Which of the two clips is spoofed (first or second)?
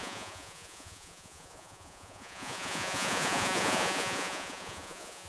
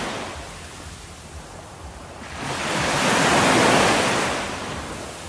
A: first